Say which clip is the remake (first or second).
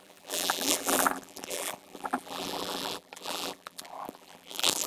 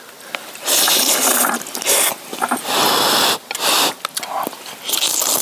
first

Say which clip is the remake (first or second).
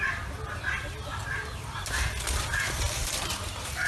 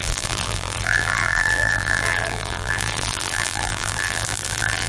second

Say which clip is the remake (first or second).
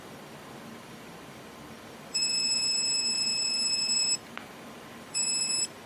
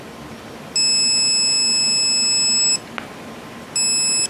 first